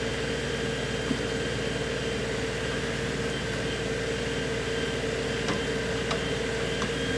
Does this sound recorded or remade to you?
recorded